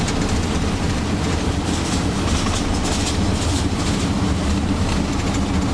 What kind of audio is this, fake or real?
real